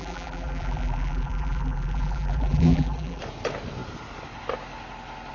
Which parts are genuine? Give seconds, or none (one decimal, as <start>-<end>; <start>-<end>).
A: 3.2-5.3